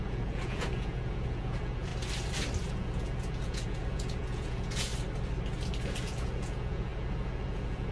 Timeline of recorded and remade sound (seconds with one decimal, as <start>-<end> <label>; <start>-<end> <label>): 0.0-1.9 remade; 1.9-2.7 recorded; 2.7-4.9 remade; 4.9-6.0 recorded; 6.0-7.9 remade